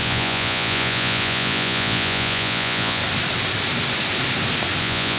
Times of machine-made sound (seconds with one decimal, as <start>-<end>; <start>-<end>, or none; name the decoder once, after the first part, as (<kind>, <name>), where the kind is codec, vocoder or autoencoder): 0.0-3.0 (vocoder, Vocos); 4.8-5.2

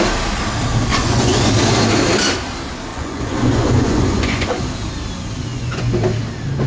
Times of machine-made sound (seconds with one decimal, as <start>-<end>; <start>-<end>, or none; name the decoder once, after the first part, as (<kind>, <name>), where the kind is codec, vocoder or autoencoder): 0.9-1.5 (vocoder, Vocos); 2.9-4.6; 5.5-6.0

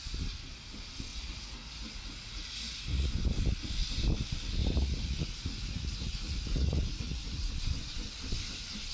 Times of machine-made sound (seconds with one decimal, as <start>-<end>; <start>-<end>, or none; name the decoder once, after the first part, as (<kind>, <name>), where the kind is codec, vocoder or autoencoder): 1.1-3.1 (vocoder, Vocos); 4.6-7.5

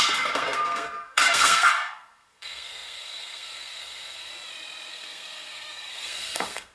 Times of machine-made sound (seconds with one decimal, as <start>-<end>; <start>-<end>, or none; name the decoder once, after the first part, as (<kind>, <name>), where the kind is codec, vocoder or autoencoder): 0.0-4.3 (codec, SNAC); 4.9-6.7

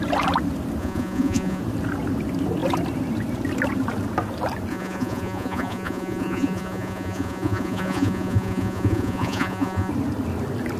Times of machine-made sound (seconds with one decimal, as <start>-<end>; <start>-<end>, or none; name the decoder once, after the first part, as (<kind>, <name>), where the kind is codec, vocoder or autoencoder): 0.8-1.6 (vocoder, Vocos); 4.7-9.9

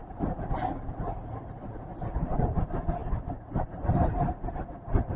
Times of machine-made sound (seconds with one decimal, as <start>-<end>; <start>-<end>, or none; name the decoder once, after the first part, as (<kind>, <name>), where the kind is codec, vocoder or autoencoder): none

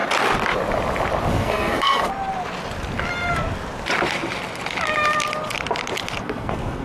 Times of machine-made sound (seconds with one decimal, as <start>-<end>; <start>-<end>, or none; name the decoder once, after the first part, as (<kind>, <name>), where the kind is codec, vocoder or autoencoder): 1.3-2.1 (codec, SNAC); 6.2-6.8